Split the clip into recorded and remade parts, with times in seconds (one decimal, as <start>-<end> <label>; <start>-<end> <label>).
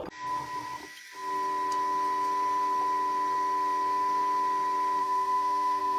0.0-5.0 recorded; 5.0-6.0 remade